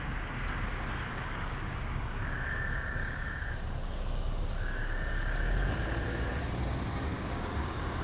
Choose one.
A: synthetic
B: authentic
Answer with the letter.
A